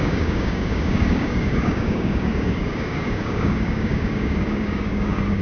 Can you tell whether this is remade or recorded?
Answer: remade